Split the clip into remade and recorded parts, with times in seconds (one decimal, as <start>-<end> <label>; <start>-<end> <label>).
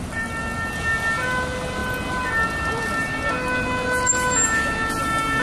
0.0-5.4 recorded